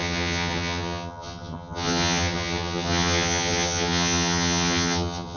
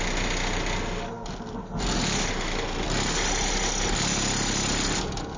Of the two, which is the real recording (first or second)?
second